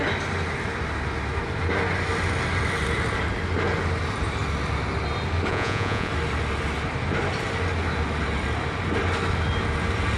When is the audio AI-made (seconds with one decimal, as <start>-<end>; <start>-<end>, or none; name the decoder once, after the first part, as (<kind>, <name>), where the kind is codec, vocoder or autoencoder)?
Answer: 5.5-6.1 (vocoder, Vocos)